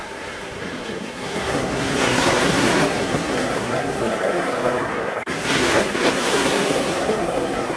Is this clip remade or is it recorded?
remade